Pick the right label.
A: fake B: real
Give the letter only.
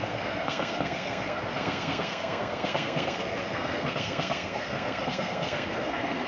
A